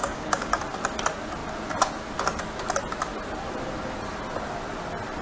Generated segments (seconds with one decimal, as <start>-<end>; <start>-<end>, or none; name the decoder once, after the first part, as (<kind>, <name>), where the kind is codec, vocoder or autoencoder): 0.0-0.6 (codec, DAC)